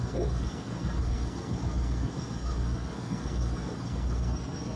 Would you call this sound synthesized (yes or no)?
yes